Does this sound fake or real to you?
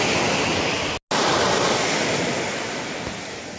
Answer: real